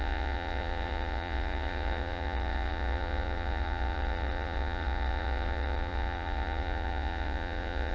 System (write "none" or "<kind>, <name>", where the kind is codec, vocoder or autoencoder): vocoder, Vocos